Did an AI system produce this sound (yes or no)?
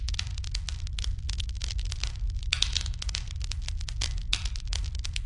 no